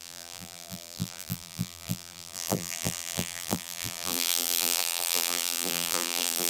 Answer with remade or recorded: remade